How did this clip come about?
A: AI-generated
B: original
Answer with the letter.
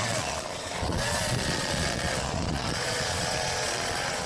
A